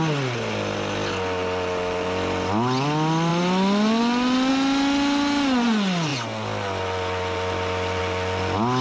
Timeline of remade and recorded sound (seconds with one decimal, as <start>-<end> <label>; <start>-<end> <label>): 0.0-8.8 recorded